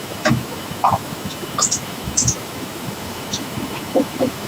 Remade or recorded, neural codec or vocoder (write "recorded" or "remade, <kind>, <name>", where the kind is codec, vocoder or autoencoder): remade, autoencoder, DAC-VAE